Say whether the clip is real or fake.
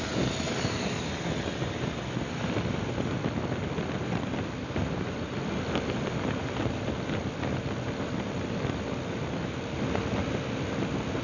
real